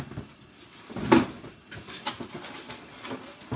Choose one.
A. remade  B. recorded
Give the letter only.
B